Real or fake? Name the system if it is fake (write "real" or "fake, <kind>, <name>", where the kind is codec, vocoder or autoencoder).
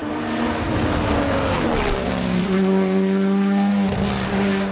real